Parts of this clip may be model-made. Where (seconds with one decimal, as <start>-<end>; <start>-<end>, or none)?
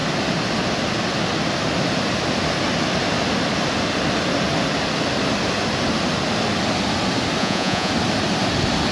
7.4-7.9